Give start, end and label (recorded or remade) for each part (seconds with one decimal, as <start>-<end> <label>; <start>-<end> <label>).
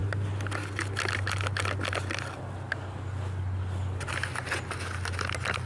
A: 0.0-5.7 recorded